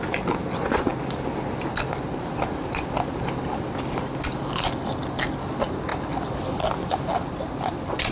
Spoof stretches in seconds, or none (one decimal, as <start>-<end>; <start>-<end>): none